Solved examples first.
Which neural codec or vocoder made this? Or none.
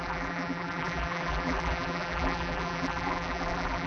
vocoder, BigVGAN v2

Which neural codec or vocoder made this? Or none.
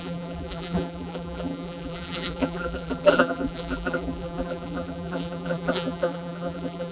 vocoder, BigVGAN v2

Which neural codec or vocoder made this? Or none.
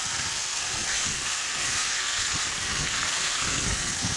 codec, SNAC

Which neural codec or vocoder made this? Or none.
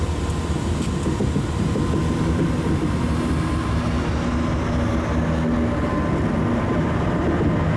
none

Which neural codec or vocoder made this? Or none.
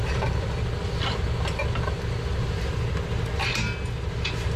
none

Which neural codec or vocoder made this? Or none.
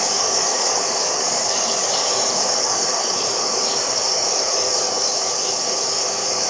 codec, DAC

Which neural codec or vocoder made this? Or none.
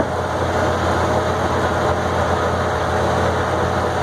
none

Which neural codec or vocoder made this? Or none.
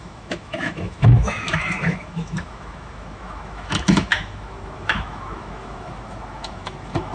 autoencoder, DAC-VAE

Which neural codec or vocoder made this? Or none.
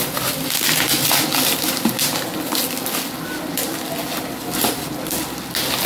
none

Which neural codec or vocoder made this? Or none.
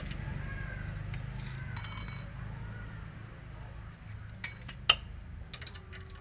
none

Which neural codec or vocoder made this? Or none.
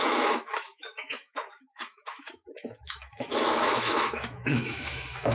autoencoder, DAC-VAE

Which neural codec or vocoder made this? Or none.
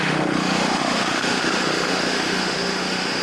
autoencoder, DAC-VAE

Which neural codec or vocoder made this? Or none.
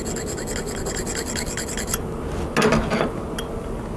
none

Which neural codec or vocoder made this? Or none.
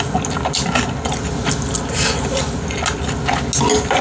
none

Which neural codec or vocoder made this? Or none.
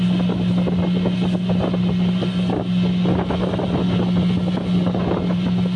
none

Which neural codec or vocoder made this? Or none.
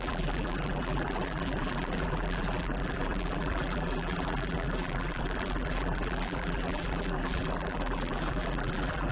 vocoder, BigVGAN v2